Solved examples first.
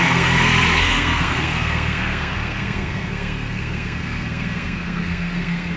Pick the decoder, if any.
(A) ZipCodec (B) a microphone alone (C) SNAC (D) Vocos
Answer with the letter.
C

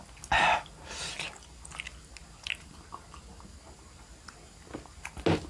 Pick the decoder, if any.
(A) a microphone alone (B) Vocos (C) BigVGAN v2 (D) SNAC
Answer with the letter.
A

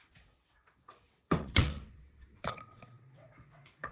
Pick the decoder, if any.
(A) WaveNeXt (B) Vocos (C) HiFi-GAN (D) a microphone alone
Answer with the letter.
A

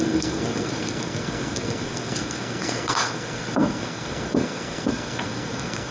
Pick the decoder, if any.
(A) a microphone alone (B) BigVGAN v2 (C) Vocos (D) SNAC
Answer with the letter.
D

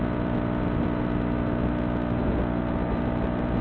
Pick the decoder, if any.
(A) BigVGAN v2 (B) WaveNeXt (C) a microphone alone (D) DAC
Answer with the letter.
C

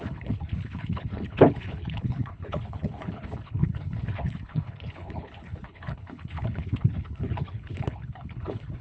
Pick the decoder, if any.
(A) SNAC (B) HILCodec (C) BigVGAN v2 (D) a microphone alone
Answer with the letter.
B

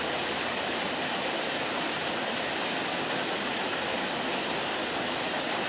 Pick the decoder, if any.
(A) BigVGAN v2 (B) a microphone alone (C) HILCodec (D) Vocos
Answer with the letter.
B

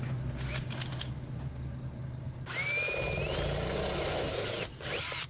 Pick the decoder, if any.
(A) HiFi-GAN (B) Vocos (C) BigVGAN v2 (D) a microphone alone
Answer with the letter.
D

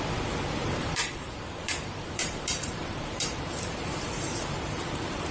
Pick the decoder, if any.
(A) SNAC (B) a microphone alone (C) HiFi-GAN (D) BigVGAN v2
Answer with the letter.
D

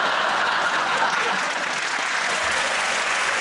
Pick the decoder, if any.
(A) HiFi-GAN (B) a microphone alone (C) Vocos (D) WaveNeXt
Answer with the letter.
C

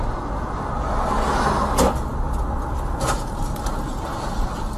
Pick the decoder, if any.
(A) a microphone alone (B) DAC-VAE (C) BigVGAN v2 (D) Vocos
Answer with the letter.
A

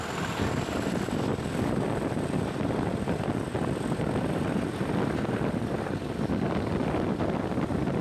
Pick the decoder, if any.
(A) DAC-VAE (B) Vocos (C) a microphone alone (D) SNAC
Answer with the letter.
C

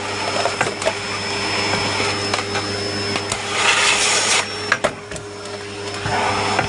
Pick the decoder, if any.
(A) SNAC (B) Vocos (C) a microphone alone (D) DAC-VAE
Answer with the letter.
C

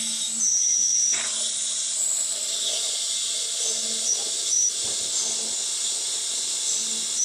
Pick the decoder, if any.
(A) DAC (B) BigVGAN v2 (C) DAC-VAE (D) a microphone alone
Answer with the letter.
D